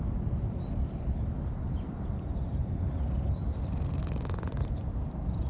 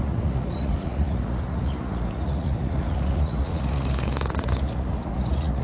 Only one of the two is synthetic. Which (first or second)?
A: second